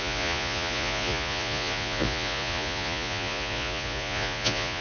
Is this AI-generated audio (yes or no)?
yes